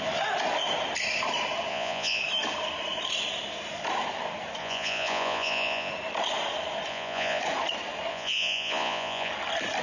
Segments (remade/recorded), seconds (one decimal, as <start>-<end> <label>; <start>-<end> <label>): 0.0-1.7 recorded; 1.7-2.2 remade; 2.2-4.6 recorded; 4.6-5.9 remade; 5.9-6.9 recorded; 6.9-7.4 remade; 7.4-8.1 recorded; 8.1-9.3 remade; 9.3-9.8 recorded